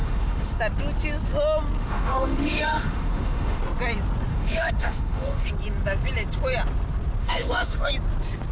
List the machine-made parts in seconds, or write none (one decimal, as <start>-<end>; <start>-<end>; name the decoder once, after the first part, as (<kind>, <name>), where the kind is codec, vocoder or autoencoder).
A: 0.0-0.6 (autoencoder, DAC-VAE); 1.8-3.6; 4.3-5.5; 7.2-7.9

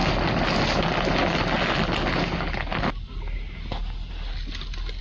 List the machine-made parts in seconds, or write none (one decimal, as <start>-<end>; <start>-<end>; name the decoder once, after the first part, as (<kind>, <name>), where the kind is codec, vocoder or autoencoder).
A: none